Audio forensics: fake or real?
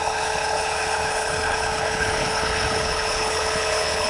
fake